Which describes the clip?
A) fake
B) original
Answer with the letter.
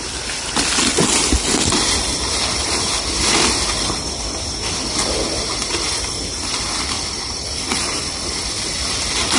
B